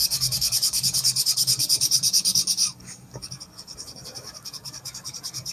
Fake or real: fake